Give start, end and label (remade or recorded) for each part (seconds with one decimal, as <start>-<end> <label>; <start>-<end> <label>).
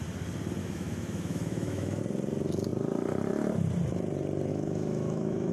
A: 0.0-0.6 recorded; 0.6-2.0 remade; 2.0-4.5 recorded; 4.5-5.5 remade